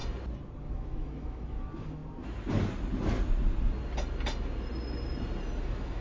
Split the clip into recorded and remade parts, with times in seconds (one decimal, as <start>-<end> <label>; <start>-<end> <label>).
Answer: 0.0-0.6 recorded; 0.6-2.0 remade; 2.0-5.6 recorded; 5.6-6.0 remade